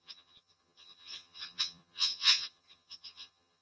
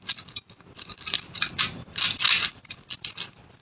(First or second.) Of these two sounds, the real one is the second